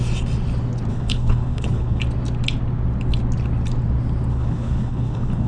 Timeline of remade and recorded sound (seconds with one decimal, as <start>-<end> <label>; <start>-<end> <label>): 0.0-0.9 recorded; 0.9-2.0 remade; 2.0-4.3 recorded; 4.3-5.5 remade